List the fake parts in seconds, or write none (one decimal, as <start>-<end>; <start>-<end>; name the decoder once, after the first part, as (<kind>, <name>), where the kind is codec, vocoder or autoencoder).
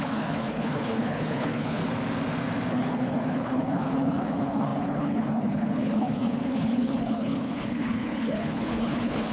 0.0-1.8 (codec, HILCodec); 2.7-9.3